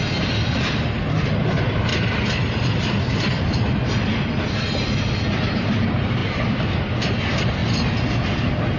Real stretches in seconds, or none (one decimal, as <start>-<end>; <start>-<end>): 0.0-1.9; 4.7-6.2; 7.1-8.8